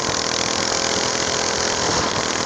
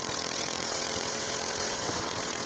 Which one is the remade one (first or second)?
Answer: second